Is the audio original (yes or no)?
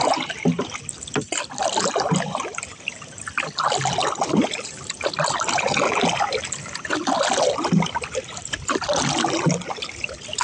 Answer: yes